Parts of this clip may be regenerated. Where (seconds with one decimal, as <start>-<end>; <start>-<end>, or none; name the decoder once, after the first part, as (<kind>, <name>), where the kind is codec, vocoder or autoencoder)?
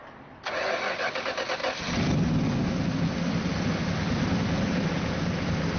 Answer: none